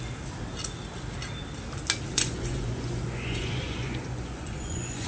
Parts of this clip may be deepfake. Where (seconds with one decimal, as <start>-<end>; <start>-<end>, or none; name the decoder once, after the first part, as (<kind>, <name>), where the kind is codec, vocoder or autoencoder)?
2.1-5.1 (vocoder, Vocos)